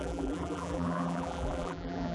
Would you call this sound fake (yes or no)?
yes